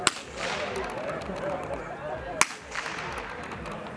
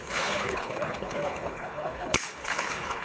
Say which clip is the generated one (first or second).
second